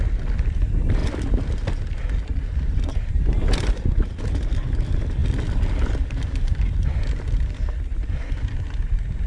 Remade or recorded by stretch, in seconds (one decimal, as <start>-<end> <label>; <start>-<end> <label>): 0.0-1.0 recorded; 1.0-3.1 remade; 3.1-5.2 recorded; 5.2-5.9 remade; 5.9-9.3 recorded